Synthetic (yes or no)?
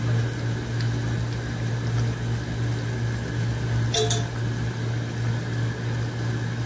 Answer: no